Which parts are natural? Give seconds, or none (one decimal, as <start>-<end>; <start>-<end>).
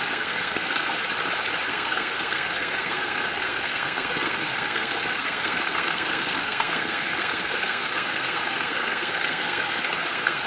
1.0-1.7